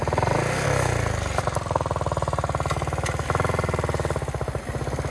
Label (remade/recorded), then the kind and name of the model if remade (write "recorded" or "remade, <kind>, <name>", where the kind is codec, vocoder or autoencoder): recorded